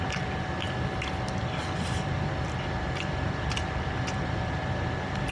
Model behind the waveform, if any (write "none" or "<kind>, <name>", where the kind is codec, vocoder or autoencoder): vocoder, BigVGAN v2